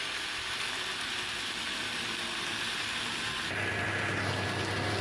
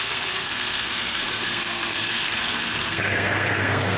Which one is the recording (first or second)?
first